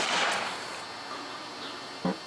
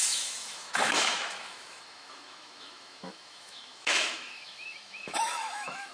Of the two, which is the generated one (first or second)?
second